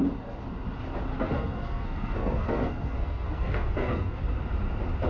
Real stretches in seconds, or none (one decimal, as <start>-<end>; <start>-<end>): 0.0-1.1; 4.2-5.1